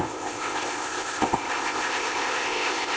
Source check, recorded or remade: remade